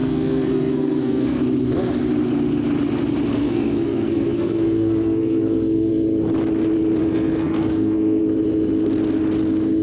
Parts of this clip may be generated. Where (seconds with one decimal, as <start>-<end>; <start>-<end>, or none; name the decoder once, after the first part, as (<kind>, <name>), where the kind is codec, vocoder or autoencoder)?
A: 0.0-1.4 (codec, SNAC); 3.3-5.9; 7.0-8.2